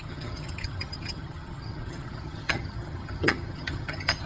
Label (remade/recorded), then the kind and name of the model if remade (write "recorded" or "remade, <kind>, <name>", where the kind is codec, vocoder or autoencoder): remade, vocoder, HiFi-GAN